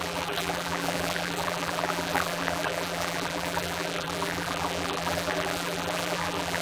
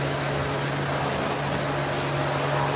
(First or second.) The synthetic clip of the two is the first